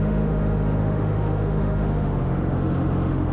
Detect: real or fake fake